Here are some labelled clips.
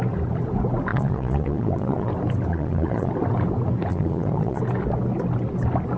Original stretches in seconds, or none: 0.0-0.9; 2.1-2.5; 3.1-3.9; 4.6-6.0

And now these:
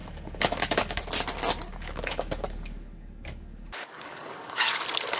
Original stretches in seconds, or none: 1.0-1.7; 4.8-5.2

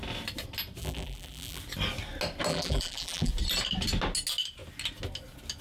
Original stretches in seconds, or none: 0.0-0.8; 1.6-2.5; 3.3-5.6

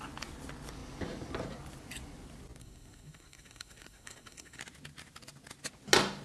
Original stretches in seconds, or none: 0.0-2.6; 4.6-6.2

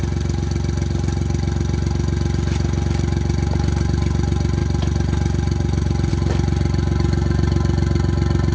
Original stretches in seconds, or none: 0.0-8.5

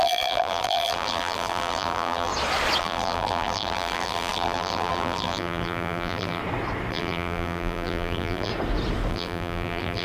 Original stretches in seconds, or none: 2.3-2.8; 6.4-6.9; 8.5-9.1